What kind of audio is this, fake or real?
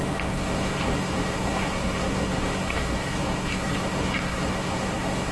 fake